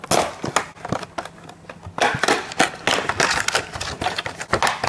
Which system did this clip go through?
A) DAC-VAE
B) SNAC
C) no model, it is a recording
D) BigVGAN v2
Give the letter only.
C